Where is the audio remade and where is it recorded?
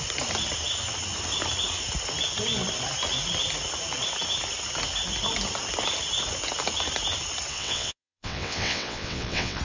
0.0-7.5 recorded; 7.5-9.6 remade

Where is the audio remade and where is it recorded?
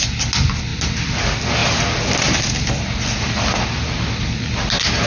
0.0-5.1 recorded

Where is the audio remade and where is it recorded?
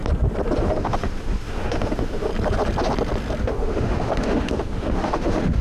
0.0-0.6 recorded; 0.6-2.3 remade; 2.3-3.4 recorded; 3.4-5.6 remade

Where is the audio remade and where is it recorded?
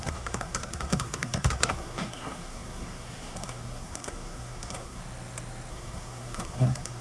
0.0-5.0 remade; 5.0-5.7 recorded; 5.7-7.0 remade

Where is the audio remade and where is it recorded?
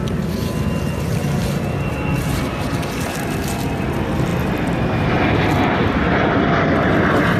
0.0-7.4 recorded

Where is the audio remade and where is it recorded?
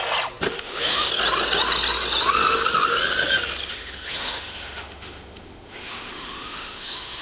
0.0-0.5 recorded; 0.5-1.1 remade; 1.1-3.7 recorded; 3.7-7.2 remade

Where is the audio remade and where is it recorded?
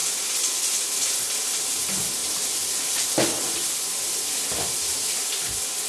0.0-5.9 remade